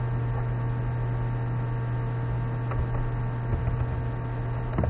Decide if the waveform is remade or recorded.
recorded